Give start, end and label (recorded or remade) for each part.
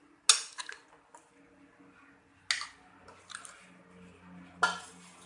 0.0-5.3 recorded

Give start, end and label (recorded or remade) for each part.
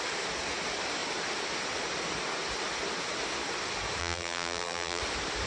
0.0-4.0 recorded; 4.0-5.0 remade; 5.0-5.5 recorded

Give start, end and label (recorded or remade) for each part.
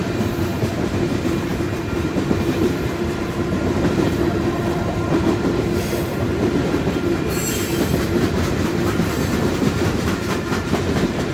0.0-7.4 remade; 7.4-7.9 recorded; 7.9-11.3 remade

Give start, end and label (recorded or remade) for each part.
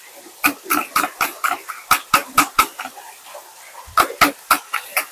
0.0-0.8 recorded; 0.8-1.7 remade; 1.7-5.1 recorded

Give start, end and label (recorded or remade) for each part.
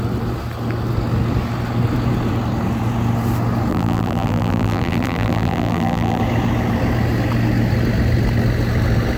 0.0-3.7 recorded; 3.7-6.2 remade; 6.2-9.2 recorded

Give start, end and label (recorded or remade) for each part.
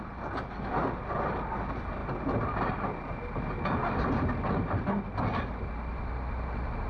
0.0-6.9 recorded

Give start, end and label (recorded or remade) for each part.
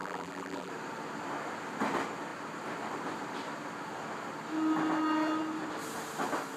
0.0-0.7 remade; 0.7-6.6 recorded